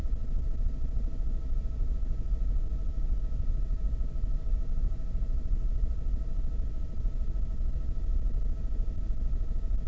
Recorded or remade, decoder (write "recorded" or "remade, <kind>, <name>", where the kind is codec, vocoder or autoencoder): recorded